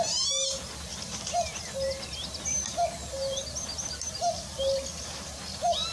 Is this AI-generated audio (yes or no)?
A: no